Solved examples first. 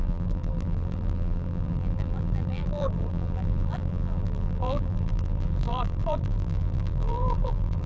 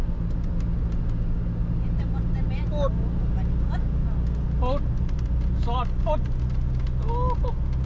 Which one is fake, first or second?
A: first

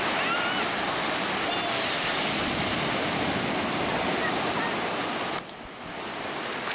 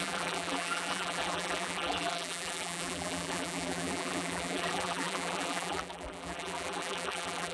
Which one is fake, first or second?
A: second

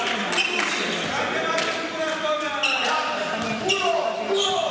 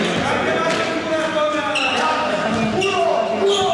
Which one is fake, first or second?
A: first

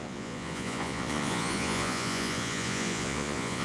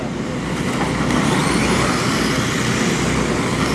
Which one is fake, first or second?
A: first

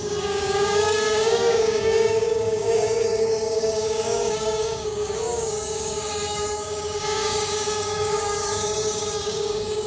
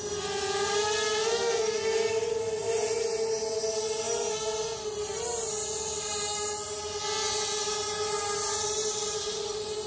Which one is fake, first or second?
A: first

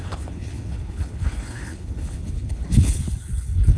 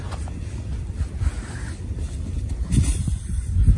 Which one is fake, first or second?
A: first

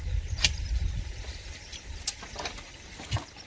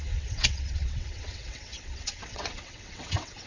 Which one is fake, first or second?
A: second